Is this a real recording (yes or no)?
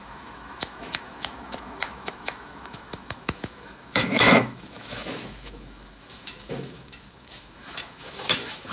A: no